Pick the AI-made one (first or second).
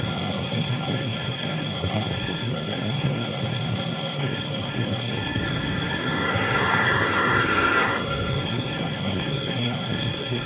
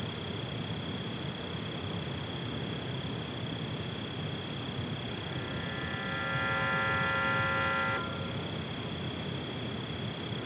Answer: first